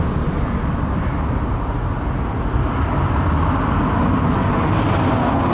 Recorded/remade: recorded